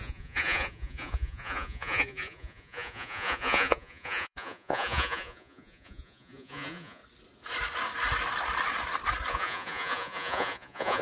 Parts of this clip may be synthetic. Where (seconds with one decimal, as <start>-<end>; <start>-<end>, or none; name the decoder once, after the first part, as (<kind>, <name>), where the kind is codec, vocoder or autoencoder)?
0.0-7.0 (vocoder, Vocos); 9.3-11.0

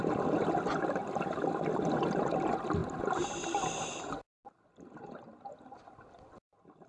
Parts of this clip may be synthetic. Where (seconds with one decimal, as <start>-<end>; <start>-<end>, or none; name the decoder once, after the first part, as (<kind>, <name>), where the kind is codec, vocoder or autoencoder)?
none